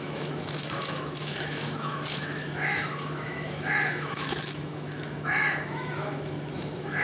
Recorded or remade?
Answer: remade